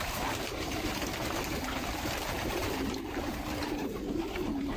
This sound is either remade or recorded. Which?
remade